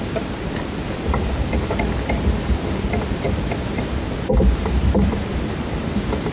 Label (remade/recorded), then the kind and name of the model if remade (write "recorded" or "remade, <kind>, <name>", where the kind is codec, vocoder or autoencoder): remade, vocoder, BigVGAN v2